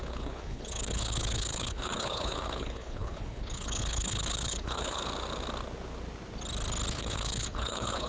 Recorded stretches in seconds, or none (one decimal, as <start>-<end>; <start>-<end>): 5.0-6.9